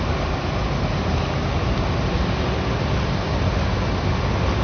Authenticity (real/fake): real